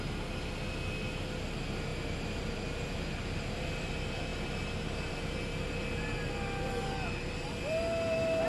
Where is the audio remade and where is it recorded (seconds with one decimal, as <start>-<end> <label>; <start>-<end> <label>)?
0.0-8.5 recorded